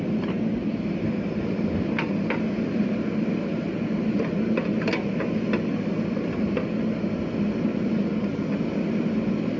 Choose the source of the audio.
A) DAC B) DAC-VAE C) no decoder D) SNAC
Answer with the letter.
C